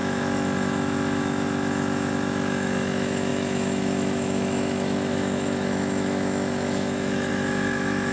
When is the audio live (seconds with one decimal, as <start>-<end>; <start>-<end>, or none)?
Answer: none